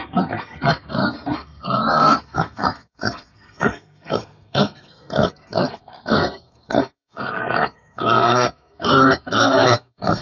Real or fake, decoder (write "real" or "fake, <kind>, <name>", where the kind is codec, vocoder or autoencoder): fake, codec, SNAC